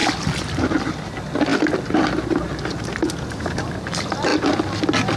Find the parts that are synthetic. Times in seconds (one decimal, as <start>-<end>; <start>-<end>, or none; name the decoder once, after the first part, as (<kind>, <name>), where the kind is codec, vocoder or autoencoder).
none